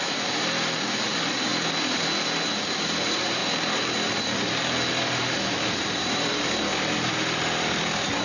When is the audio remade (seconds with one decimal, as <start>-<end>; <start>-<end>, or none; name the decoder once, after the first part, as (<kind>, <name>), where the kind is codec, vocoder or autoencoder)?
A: 0.0-1.5 (vocoder, BigVGAN v2); 2.7-3.4; 4.9-8.2